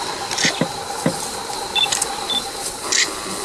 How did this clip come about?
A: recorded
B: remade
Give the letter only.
A